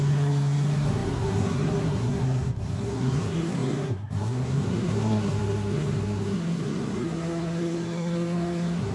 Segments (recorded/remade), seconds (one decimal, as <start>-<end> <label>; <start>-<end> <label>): 0.0-8.9 remade

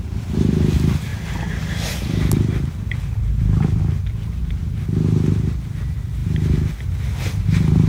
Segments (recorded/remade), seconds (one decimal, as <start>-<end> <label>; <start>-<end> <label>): 0.0-1.1 recorded; 1.1-3.8 remade; 3.8-7.9 recorded

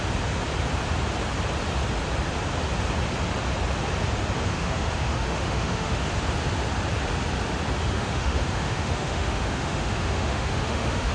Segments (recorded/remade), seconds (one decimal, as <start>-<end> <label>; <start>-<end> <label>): 0.0-4.5 recorded; 4.5-6.1 remade; 6.1-7.8 recorded; 7.8-11.1 remade

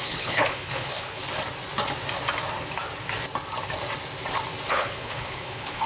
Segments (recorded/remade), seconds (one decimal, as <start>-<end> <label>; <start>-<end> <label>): 0.0-1.2 remade; 1.2-4.7 recorded; 4.7-5.9 remade